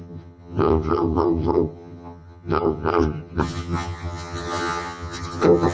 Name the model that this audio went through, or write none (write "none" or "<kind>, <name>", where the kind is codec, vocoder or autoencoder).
vocoder, HiFi-GAN